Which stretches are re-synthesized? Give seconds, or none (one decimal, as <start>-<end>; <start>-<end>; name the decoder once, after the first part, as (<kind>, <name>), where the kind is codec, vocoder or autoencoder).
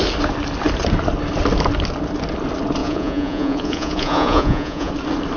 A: 2.8-4.9 (vocoder, Vocos)